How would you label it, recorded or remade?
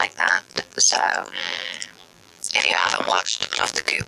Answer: remade